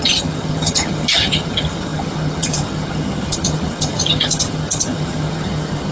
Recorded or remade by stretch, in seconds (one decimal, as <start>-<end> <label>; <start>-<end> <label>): 0.0-5.9 remade